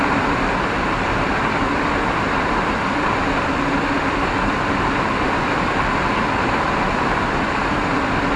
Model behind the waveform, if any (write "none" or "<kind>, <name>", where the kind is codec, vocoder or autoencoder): vocoder, BigVGAN v2